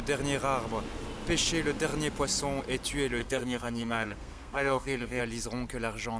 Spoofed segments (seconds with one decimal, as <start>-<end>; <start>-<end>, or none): 3.2-5.2